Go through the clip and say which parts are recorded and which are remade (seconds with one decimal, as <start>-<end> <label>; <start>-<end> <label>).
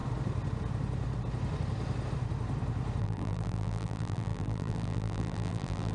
0.0-3.0 recorded; 3.0-5.9 remade